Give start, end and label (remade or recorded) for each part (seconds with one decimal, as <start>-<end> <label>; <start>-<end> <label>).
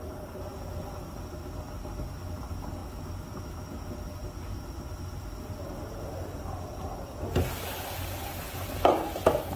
0.0-9.6 recorded